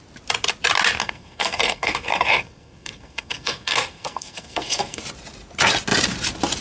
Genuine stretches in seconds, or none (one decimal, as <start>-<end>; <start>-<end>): 0.0-1.0; 5.0-6.6